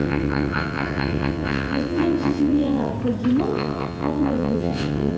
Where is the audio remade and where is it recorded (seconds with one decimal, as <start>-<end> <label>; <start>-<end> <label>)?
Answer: 0.0-2.9 remade; 2.9-3.4 recorded; 3.4-5.2 remade

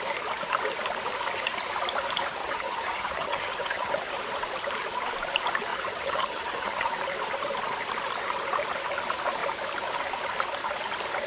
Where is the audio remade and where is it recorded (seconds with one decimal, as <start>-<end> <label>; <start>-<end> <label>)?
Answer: 0.0-2.4 recorded; 2.4-4.0 remade; 4.0-5.7 recorded; 5.7-6.9 remade; 6.9-11.3 recorded